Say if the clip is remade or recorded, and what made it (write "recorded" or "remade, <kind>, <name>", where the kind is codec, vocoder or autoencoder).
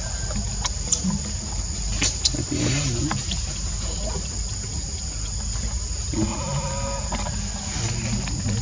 recorded